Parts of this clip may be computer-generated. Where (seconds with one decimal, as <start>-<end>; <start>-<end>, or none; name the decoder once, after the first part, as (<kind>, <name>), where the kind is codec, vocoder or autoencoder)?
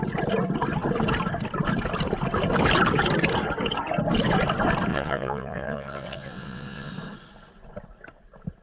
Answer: 4.9-6.9 (vocoder, WaveNeXt)